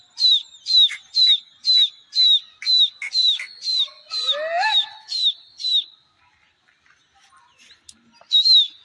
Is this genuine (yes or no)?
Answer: yes